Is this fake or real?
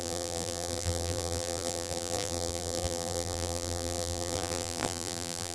fake